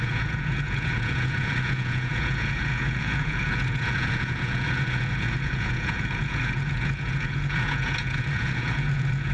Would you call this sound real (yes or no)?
no